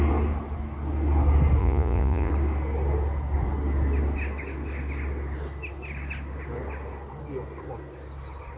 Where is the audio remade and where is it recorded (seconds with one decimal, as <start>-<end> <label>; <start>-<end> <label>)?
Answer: 0.0-1.6 recorded; 1.6-2.3 remade; 2.3-8.6 recorded